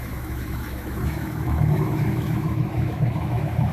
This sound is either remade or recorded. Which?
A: remade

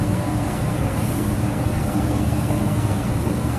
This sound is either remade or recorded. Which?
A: remade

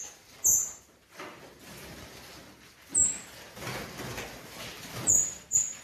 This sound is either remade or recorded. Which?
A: recorded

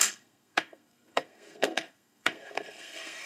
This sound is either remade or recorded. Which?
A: remade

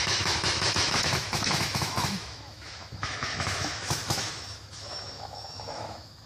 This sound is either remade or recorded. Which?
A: remade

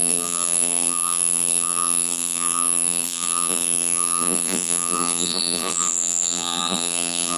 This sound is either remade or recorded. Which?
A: remade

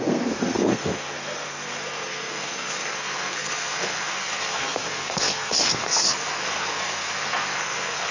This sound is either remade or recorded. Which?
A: remade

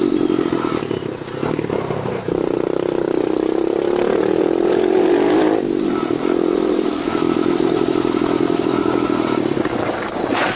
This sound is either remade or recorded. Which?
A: remade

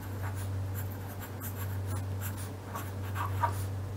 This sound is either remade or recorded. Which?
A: recorded